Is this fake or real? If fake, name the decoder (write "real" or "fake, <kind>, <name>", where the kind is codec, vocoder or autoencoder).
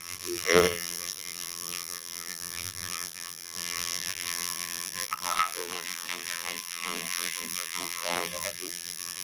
fake, vocoder, BigVGAN v2